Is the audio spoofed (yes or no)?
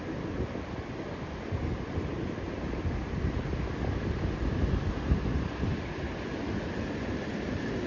no